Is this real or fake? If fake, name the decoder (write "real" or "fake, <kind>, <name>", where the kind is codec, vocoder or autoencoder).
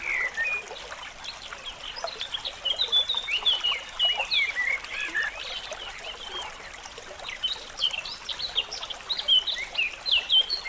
real